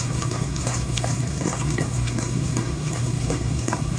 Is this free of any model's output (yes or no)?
no